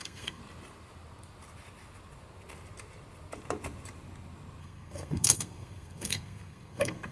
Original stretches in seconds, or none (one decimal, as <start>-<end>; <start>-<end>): 0.4-4.6